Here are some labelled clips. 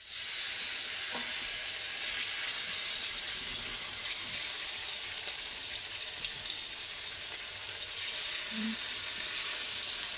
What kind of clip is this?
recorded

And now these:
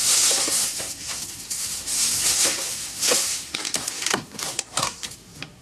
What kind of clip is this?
remade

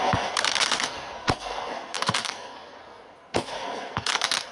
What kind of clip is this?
remade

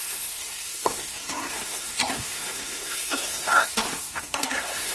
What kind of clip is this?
remade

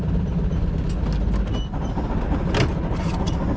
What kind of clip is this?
recorded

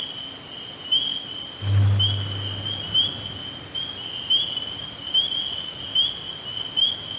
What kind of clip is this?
recorded